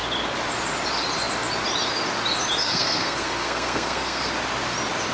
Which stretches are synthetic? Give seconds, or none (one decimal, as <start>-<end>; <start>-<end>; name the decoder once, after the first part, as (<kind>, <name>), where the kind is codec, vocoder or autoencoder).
2.6-4.3 (codec, SNAC)

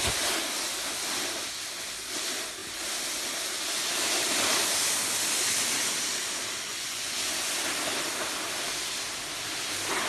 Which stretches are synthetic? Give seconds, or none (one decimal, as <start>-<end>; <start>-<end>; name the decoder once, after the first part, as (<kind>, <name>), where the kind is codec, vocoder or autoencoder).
6.7-7.5 (vocoder, Vocos)